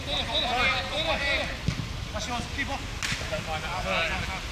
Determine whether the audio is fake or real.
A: real